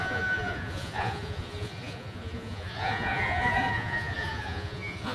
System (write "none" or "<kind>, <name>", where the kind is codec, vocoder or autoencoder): vocoder, Vocos